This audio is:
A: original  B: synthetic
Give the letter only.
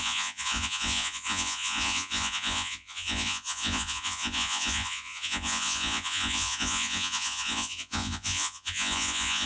B